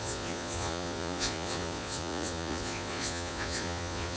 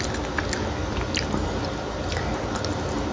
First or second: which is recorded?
second